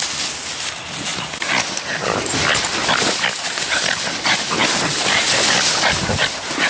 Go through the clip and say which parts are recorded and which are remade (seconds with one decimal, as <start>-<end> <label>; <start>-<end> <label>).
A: 0.0-6.7 recorded

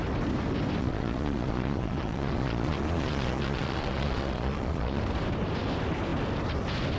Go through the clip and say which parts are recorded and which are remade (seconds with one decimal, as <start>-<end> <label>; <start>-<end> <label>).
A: 0.0-0.8 recorded; 0.8-5.0 remade; 5.0-7.0 recorded

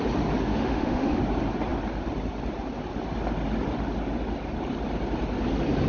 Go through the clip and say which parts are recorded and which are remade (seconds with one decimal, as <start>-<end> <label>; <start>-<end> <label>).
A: 0.0-0.5 recorded; 0.5-1.2 remade; 1.2-5.9 recorded

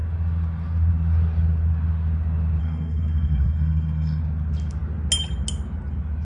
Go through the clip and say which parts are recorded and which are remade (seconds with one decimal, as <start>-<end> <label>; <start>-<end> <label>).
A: 0.0-2.6 recorded; 2.6-4.2 remade; 4.2-6.2 recorded

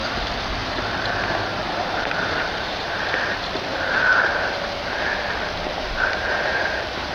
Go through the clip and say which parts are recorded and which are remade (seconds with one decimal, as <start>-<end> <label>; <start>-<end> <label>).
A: 0.0-1.5 recorded; 1.5-3.0 remade; 3.0-3.7 recorded; 3.7-7.1 remade

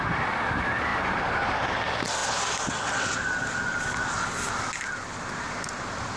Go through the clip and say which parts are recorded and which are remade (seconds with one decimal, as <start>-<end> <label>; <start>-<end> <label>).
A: 0.0-0.9 recorded; 0.9-1.6 remade; 1.6-6.2 recorded